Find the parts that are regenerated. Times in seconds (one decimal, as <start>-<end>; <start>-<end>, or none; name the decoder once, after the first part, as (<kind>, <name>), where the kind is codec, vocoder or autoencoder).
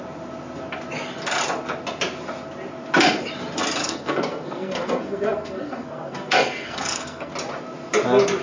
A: 3.8-7.3 (codec, SNAC)